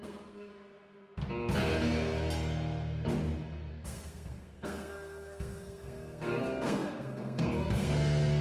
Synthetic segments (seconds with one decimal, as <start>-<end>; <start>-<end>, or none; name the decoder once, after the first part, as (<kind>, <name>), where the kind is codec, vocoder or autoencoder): 0.0-0.5 (codec, SNAC); 3.7-8.4